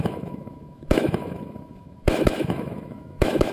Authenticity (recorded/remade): remade